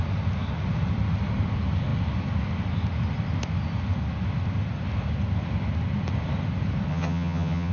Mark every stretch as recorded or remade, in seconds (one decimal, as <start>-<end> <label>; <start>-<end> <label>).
0.0-6.9 recorded; 6.9-7.7 remade